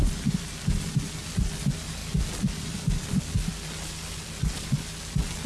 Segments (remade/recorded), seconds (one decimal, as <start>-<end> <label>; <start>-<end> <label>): 0.0-0.9 remade; 0.9-5.5 recorded